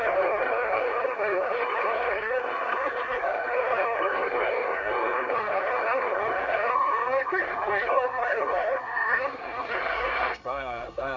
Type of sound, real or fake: fake